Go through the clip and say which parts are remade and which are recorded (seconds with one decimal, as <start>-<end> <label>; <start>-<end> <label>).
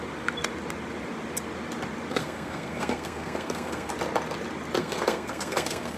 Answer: 0.0-2.1 recorded; 2.1-3.9 remade; 3.9-4.8 recorded; 4.8-6.0 remade